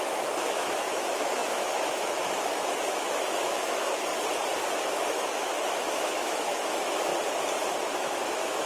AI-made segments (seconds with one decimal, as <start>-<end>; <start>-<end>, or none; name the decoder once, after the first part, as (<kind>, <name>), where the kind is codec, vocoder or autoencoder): 0.0-4.1 (autoencoder, DAC-VAE); 4.8-7.1; 7.8-8.7